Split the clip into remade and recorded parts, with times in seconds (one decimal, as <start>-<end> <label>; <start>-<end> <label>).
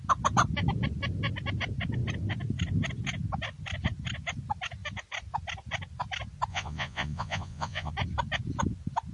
0.0-6.5 recorded; 6.5-7.9 remade; 7.9-9.1 recorded